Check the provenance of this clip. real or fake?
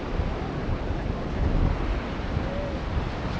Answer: real